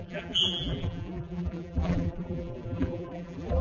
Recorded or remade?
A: remade